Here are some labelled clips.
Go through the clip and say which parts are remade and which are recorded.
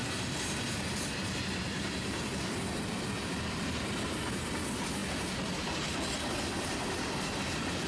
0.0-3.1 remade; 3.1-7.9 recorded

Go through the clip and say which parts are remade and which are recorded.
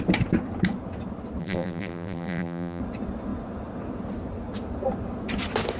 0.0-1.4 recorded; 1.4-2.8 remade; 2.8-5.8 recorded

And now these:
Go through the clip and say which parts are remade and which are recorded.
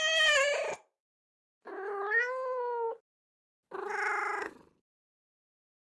0.0-4.2 recorded; 4.2-4.8 remade; 4.8-5.8 recorded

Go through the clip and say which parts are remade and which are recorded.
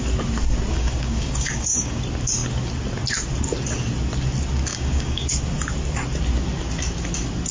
0.0-0.7 recorded; 0.7-2.0 remade; 2.0-4.7 recorded; 4.7-5.3 remade; 5.3-7.5 recorded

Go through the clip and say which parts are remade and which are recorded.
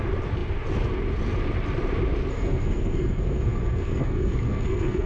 0.0-2.3 recorded; 2.3-5.1 remade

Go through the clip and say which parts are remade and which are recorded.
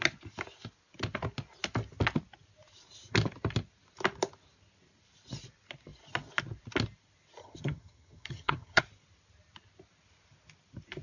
0.0-7.4 recorded; 7.4-8.8 remade; 8.8-11.0 recorded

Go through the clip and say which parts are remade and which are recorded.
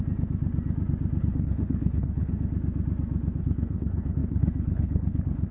0.0-1.2 recorded; 1.2-2.3 remade; 2.3-3.4 recorded; 3.4-5.5 remade